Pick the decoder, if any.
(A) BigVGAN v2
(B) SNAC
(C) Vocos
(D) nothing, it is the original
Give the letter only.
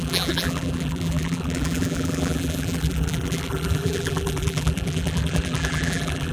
A